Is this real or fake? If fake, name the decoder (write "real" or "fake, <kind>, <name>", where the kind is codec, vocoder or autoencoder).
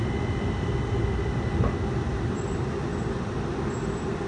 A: real